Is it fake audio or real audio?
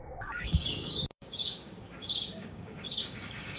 fake